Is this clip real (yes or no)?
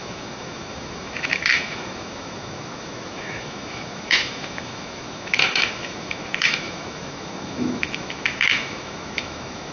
no